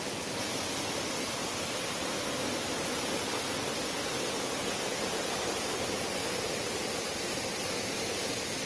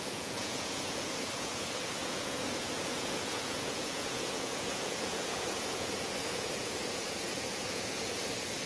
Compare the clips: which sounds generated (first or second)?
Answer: second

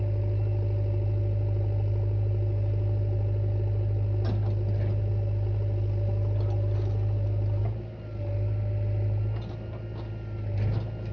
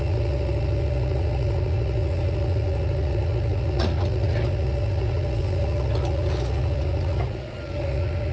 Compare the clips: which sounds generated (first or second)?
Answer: second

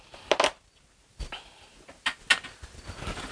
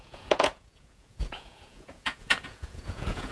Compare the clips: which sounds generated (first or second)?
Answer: second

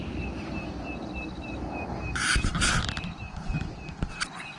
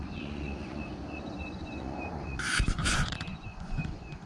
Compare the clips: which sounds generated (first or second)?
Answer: second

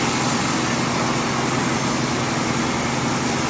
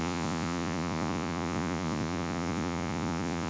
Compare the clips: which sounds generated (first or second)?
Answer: second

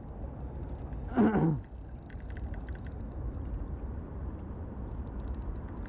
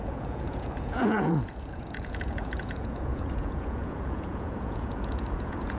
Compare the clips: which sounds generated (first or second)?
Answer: second